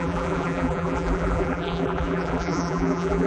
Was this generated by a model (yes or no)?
yes